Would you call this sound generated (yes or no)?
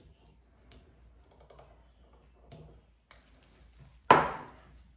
no